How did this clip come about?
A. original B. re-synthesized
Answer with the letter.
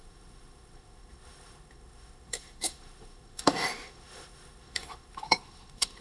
B